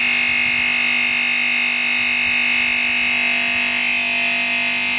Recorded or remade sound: recorded